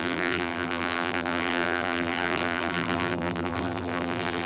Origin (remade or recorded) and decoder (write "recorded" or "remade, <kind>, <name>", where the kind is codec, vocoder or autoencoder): remade, vocoder, BigVGAN v2